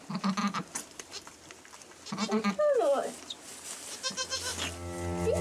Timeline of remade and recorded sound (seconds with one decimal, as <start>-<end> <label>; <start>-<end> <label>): 0.0-0.4 recorded; 0.4-1.5 remade; 1.5-5.4 recorded